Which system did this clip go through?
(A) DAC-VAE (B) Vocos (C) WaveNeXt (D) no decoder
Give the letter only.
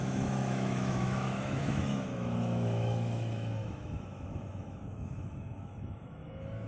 A